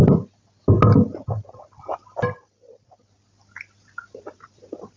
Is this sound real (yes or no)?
yes